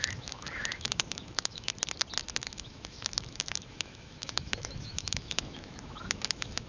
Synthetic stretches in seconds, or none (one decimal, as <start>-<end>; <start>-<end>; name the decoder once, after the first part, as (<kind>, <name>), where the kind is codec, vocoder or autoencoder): 0.0-1.7 (autoencoder, DAC-VAE); 2.3-6.7